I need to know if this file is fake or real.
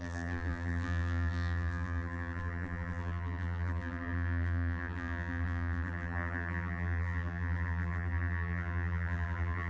fake